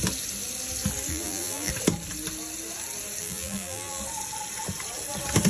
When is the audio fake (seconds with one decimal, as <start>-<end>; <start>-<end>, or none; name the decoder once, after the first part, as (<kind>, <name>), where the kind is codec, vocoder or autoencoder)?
1.1-1.7 (vocoder, BigVGAN v2); 3.2-4.0